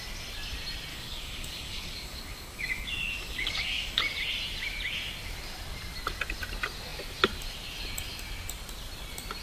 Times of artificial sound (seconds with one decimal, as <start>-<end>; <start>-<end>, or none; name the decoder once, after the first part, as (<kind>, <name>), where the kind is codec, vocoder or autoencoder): 0.9-4.0 (codec, DAC)